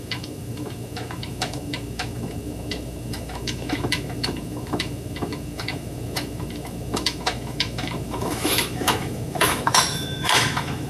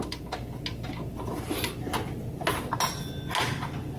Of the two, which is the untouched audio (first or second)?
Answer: second